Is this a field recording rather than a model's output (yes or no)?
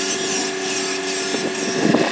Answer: yes